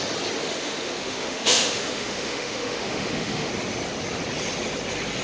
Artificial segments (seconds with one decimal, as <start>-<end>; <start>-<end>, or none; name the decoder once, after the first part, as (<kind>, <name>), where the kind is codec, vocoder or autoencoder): 0.4-3.5 (autoencoder, DAC-VAE)